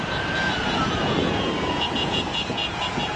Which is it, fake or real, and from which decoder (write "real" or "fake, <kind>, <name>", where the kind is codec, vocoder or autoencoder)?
fake, vocoder, Vocos